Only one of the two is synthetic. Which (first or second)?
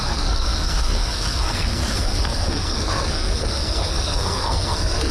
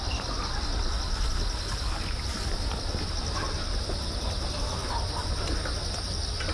first